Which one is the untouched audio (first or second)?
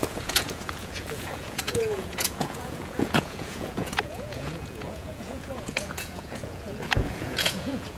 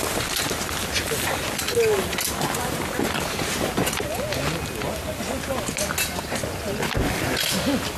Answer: second